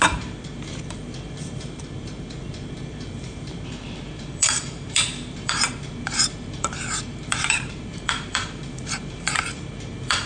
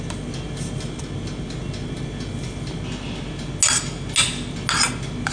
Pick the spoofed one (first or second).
first